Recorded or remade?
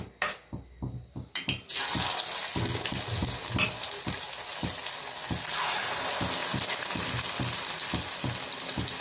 recorded